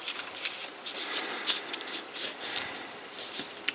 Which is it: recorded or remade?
remade